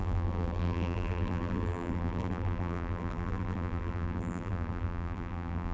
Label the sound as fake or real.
fake